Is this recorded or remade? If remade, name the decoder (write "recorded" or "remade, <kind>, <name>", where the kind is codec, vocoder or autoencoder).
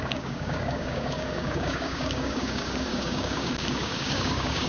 remade, codec, DAC